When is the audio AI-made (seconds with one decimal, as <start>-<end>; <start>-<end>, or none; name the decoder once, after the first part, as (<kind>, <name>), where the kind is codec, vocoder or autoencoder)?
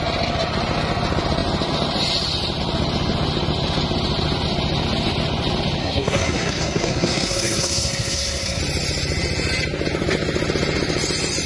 5.8-8.6 (codec, SNAC)